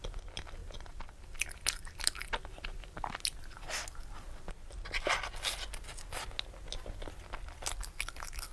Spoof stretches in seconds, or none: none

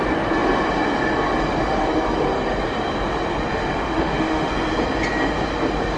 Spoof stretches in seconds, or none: 3.5-4.5